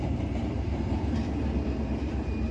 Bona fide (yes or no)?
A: yes